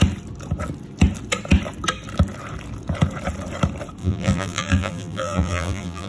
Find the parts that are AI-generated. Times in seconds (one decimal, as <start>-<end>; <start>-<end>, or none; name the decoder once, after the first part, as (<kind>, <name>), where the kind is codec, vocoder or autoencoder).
4.0-6.1 (vocoder, BigVGAN v2)